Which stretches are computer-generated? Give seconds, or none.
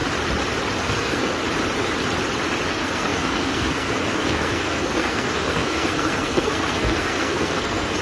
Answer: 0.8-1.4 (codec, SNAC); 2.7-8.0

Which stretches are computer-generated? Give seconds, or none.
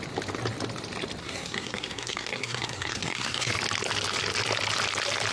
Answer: 1.2-3.5 (codec, SNAC)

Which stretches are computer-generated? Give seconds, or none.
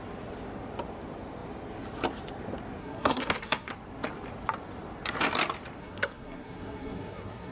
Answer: 2.8-3.7 (codec, SNAC); 5.8-7.5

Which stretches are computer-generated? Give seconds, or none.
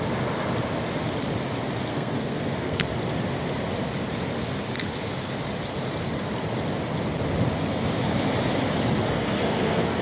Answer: 1.9-2.9 (codec, SNAC); 9.0-10.0